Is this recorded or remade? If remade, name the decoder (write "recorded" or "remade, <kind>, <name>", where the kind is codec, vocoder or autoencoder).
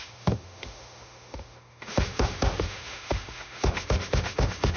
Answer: remade, autoencoder, DAC-VAE